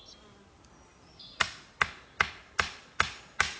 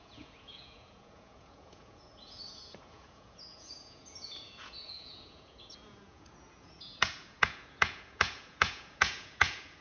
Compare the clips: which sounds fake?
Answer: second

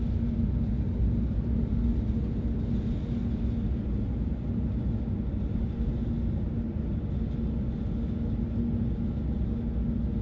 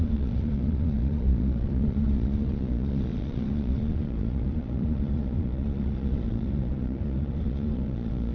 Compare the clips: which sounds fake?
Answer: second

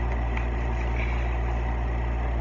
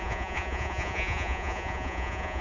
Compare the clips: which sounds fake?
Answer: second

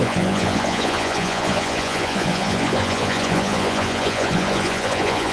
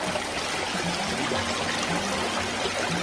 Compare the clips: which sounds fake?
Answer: first